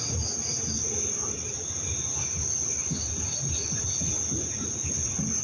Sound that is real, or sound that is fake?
real